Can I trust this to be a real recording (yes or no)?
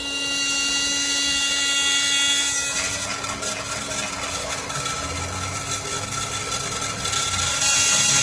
yes